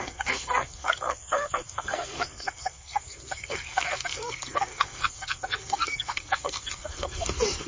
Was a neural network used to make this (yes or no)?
yes